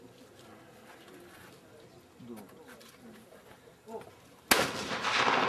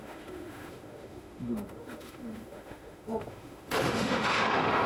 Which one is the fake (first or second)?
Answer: second